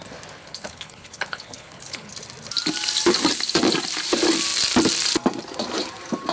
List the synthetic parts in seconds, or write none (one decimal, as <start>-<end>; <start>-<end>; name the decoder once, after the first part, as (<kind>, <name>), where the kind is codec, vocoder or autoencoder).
0.4-2.1 (codec, HILCodec)